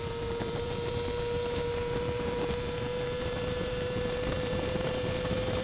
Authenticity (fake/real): fake